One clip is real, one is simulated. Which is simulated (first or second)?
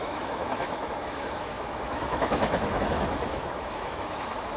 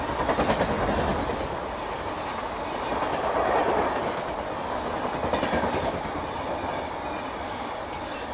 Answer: first